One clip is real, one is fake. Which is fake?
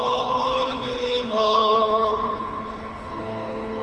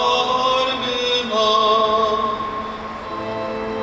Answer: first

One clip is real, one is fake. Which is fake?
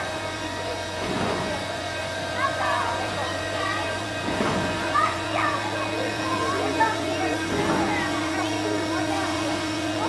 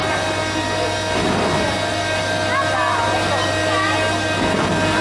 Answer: first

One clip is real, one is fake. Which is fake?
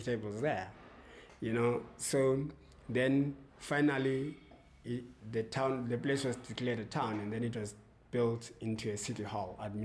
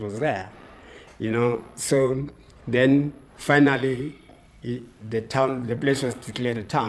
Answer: second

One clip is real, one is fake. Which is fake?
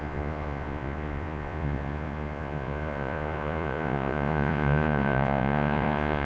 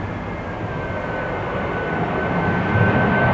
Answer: first